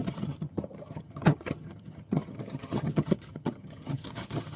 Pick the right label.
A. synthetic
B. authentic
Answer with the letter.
A